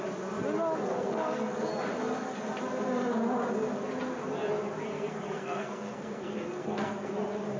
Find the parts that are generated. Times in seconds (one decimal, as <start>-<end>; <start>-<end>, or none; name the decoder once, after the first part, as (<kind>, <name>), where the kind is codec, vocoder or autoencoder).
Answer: 0.9-1.7 (codec, SNAC); 4.9-7.1